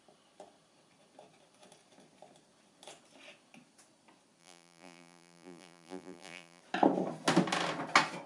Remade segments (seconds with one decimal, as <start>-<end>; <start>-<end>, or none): 4.4-6.6